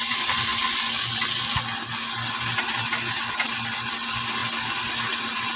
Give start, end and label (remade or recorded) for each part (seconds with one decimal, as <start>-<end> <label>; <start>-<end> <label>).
0.0-0.5 remade; 0.5-3.9 recorded; 3.9-4.4 remade; 4.4-5.6 recorded